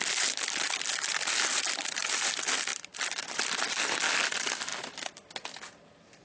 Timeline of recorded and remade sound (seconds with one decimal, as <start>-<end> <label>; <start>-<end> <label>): 0.0-6.2 recorded